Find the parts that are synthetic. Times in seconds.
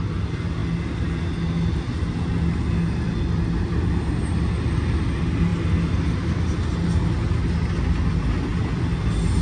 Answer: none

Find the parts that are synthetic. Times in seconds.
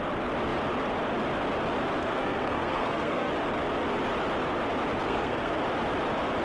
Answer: 2.0-3.3; 5.0-5.6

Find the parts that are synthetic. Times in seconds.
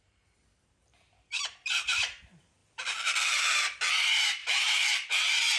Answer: 0.9-2.2; 2.6-3.9; 4.4-5.1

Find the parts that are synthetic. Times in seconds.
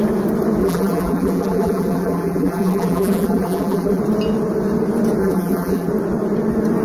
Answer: 0.6-4.0; 5.2-5.9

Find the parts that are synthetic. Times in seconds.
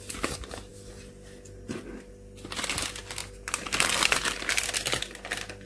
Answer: 3.2-4.7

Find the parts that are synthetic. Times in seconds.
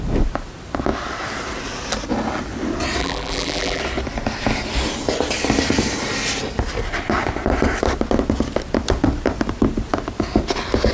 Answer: 3.0-3.8